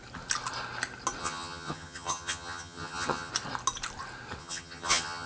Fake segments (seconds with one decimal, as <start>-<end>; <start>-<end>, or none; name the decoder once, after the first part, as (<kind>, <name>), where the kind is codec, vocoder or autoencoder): 1.2-3.3 (vocoder, HiFi-GAN); 4.4-5.3